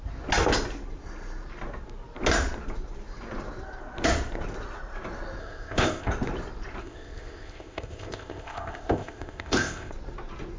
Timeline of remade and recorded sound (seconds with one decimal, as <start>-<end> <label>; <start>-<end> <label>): 0.0-5.4 recorded; 5.4-6.1 remade; 6.1-6.8 recorded; 6.8-9.9 remade; 9.9-10.6 recorded